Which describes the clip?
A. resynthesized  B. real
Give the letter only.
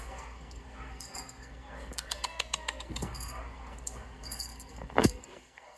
A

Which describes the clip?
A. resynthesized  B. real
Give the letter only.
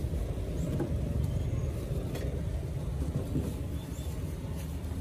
B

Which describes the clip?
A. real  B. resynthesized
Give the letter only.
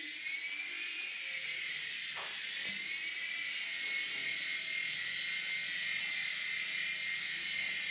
A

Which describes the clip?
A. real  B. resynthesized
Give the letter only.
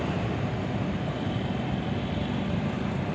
A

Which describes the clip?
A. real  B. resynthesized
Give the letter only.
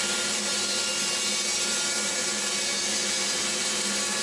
A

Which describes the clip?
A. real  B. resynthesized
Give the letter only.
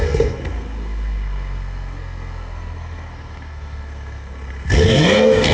B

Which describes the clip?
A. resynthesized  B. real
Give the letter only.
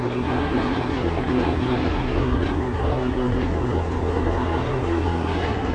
A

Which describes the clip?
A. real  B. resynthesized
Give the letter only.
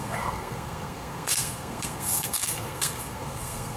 B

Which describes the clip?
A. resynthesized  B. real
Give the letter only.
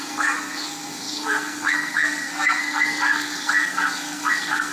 A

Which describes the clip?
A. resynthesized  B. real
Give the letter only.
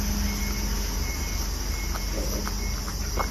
B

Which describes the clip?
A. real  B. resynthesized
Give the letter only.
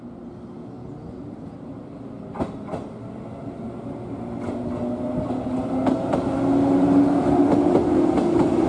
A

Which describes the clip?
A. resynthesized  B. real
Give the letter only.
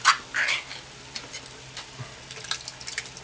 B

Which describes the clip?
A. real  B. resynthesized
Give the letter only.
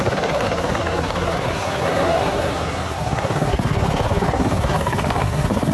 B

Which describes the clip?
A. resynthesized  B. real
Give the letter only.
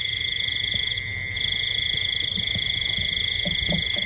B